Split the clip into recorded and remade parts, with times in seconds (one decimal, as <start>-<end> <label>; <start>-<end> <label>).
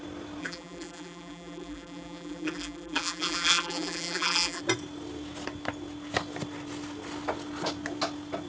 0.0-0.4 recorded; 0.4-4.6 remade; 4.6-8.5 recorded